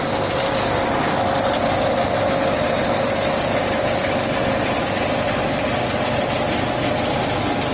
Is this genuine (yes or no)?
yes